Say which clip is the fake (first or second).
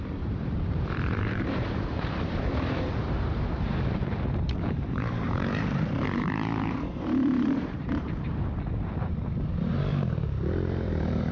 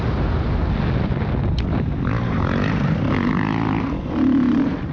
first